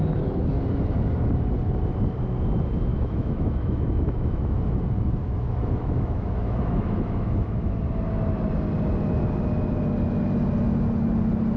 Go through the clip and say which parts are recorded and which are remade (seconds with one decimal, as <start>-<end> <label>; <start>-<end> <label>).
0.0-2.9 recorded; 2.9-4.6 remade; 4.6-5.2 recorded; 5.2-7.8 remade; 7.8-11.6 recorded